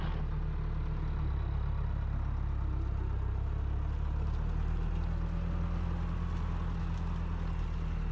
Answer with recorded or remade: recorded